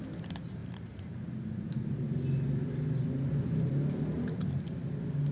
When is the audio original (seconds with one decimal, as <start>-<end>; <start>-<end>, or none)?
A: 0.0-5.3